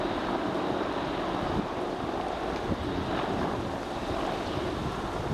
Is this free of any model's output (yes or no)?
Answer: yes